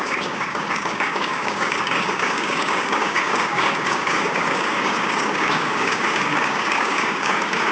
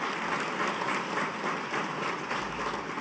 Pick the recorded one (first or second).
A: second